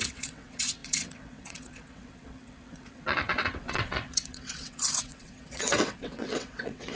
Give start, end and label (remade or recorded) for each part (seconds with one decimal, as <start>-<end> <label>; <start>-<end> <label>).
0.0-7.0 remade